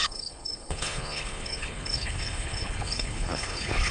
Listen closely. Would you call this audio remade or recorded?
remade